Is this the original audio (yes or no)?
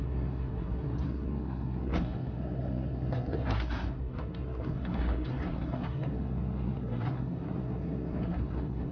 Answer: no